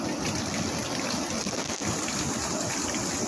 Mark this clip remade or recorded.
recorded